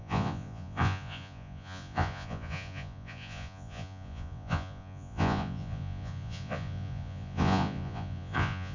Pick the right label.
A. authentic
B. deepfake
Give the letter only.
B